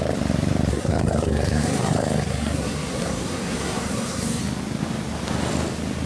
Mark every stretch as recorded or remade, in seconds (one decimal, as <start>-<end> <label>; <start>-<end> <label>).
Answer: 0.0-0.7 recorded; 0.7-4.4 remade; 4.4-6.1 recorded